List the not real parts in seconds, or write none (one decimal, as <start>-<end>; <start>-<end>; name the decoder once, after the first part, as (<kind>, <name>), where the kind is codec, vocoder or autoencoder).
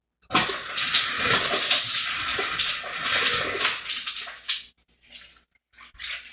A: none